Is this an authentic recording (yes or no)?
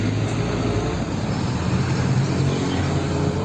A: yes